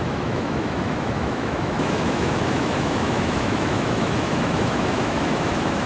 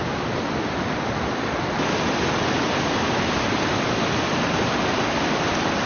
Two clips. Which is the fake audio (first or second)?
first